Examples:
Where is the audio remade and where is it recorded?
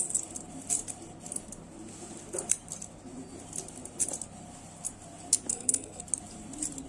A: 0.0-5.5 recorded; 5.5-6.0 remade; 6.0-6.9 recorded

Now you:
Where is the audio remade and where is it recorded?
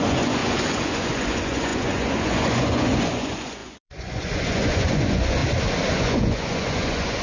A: 0.0-5.4 remade; 5.4-5.9 recorded; 5.9-7.2 remade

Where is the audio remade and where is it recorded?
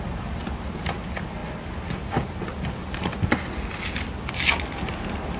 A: 0.0-5.4 recorded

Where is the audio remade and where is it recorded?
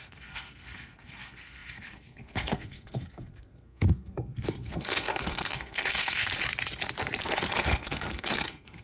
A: 0.0-6.3 remade; 6.3-7.2 recorded; 7.2-8.8 remade